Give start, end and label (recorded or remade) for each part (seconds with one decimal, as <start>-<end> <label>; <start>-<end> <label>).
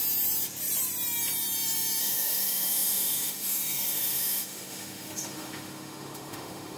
0.0-2.0 recorded; 2.0-6.8 remade